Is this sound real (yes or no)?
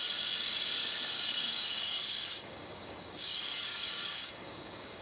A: no